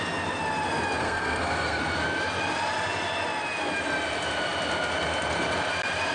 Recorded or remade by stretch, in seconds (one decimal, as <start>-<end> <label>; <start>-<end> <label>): 0.0-1.0 recorded; 1.0-1.8 remade; 1.8-6.1 recorded